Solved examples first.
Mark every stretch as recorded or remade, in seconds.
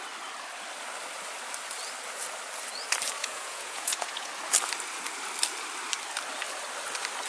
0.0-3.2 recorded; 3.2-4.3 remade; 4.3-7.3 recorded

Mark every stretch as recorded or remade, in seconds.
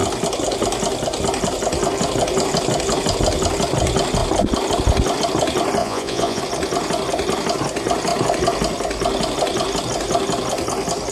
0.0-5.8 recorded; 5.8-6.4 remade; 6.4-11.1 recorded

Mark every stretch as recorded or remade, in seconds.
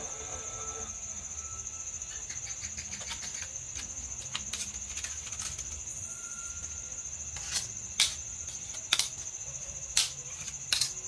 0.0-5.9 recorded; 5.9-6.5 remade; 6.5-11.1 recorded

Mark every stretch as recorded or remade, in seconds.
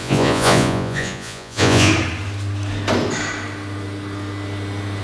0.0-1.9 remade; 1.9-5.0 recorded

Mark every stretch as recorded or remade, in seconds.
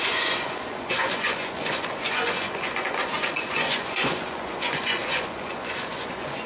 0.0-6.5 remade